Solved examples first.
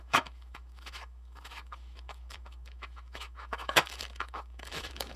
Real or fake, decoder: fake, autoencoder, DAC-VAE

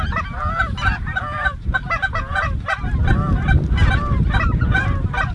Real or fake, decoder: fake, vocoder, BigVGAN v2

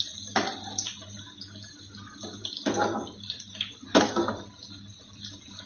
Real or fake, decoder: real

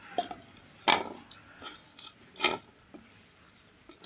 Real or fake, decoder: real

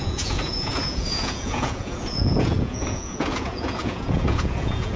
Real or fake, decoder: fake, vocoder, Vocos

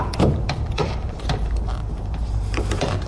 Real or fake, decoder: fake, vocoder, BigVGAN v2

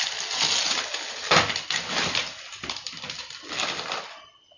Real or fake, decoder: real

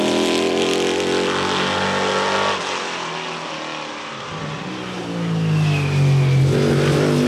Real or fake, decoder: real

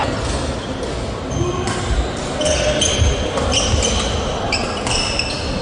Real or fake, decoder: real